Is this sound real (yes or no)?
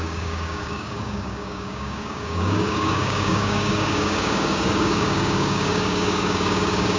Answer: no